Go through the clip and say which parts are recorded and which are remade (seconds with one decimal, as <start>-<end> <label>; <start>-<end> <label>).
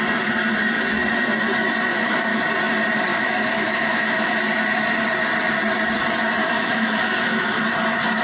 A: 0.0-1.9 recorded; 1.9-2.4 remade; 2.4-3.1 recorded; 3.1-4.4 remade; 4.4-6.4 recorded; 6.4-7.6 remade; 7.6-8.2 recorded